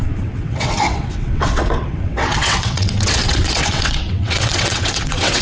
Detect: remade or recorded remade